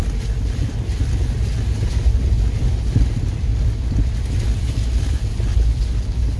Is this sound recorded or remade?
recorded